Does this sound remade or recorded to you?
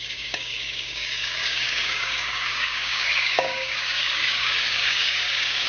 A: remade